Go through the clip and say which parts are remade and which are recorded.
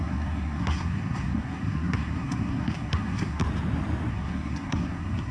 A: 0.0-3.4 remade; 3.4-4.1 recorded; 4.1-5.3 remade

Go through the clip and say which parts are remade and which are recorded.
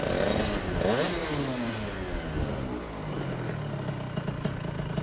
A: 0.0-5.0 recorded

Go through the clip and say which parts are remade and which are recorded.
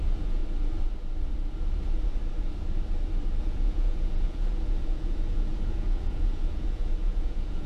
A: 0.0-0.4 remade; 0.4-3.4 recorded; 3.4-7.7 remade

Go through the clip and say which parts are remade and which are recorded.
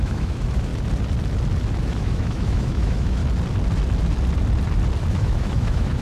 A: 0.0-0.7 remade; 0.7-1.8 recorded; 1.8-3.2 remade; 3.2-5.1 recorded; 5.1-6.0 remade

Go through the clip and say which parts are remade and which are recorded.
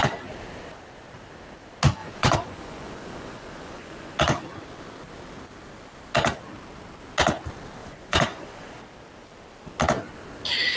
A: 0.0-2.0 recorded; 2.0-4.2 remade; 4.2-7.8 recorded; 7.8-8.7 remade; 8.7-10.8 recorded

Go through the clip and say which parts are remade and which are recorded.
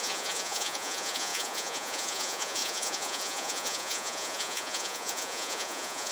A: 0.0-6.1 remade